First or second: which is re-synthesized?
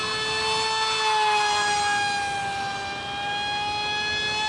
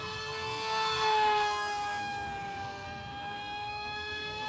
second